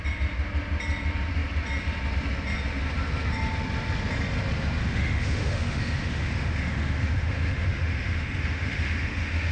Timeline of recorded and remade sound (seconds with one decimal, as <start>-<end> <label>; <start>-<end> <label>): 0.0-4.8 recorded; 4.8-9.5 remade